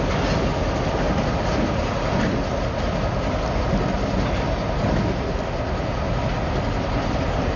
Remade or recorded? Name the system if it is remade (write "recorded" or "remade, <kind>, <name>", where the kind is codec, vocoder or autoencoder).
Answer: recorded